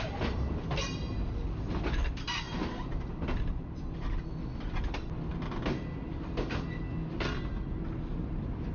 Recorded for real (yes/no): yes